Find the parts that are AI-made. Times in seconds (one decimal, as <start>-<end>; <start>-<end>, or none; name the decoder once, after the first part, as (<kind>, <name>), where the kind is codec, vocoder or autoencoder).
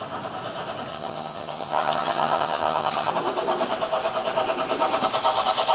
0.9-3.1 (vocoder, HiFi-GAN)